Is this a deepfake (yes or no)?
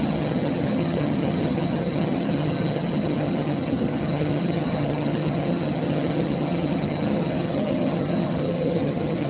yes